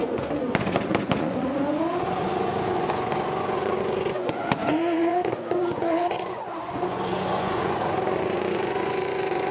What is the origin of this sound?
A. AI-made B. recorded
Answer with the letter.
A